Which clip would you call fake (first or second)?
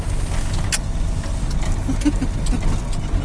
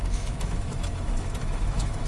second